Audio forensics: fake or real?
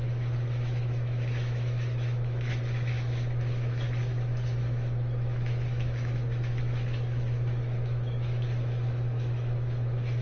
fake